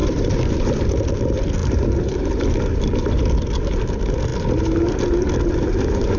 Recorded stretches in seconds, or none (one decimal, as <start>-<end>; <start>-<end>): 0.7-6.2